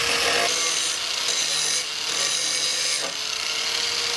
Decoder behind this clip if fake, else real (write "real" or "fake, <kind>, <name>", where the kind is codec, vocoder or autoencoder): real